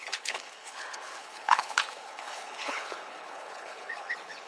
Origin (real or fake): fake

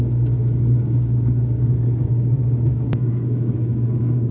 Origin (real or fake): fake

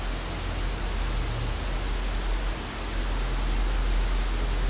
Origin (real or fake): real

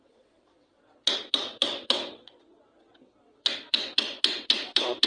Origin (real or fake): fake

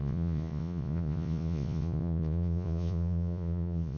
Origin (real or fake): fake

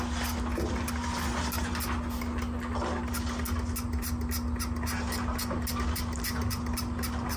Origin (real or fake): real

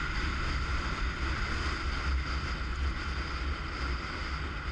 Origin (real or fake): real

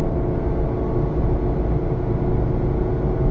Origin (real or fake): real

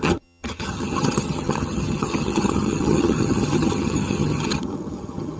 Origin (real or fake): fake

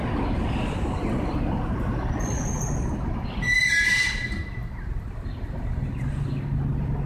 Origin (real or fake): real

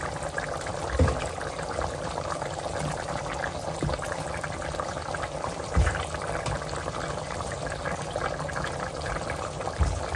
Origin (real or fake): real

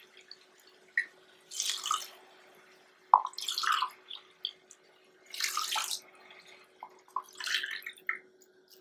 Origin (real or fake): real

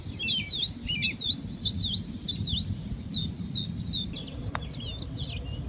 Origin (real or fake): real